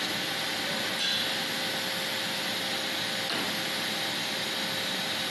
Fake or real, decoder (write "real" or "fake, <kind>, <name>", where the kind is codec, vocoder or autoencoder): real